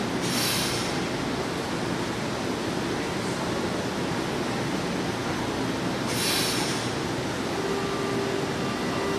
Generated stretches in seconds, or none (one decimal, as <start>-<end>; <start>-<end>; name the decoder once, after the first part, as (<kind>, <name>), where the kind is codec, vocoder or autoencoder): none